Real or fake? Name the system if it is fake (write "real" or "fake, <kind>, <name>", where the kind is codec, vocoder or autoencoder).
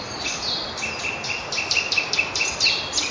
real